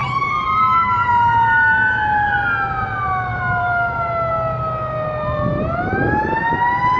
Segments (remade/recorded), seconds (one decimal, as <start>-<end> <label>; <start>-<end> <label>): 0.0-1.1 remade; 1.1-3.3 recorded; 3.3-4.3 remade; 4.3-7.0 recorded